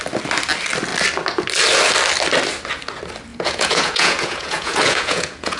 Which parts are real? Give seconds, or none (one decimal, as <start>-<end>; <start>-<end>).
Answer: 0.0-3.3

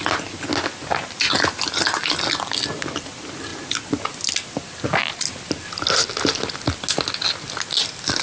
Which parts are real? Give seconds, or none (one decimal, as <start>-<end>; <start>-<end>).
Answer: 0.0-8.2

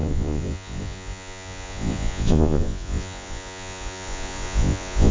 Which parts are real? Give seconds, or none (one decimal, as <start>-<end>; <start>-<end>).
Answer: none

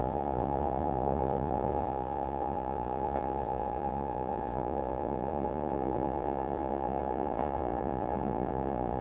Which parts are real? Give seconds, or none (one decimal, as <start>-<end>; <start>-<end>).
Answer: none

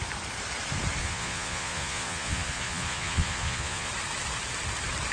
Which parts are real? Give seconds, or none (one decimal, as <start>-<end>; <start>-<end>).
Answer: 0.0-1.0; 3.9-5.1